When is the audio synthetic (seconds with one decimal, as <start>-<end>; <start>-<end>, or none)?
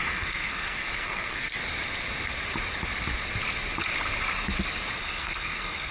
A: 0.0-1.5; 5.0-5.9